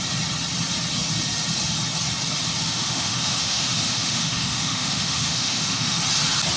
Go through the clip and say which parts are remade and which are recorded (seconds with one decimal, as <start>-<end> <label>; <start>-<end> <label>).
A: 0.0-2.6 recorded; 2.6-6.0 remade; 6.0-6.6 recorded